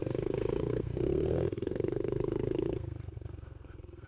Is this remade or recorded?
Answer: remade